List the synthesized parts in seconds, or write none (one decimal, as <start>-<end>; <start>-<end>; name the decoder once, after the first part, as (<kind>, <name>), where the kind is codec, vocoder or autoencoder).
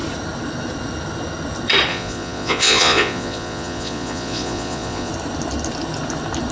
1.9-5.1 (vocoder, Vocos)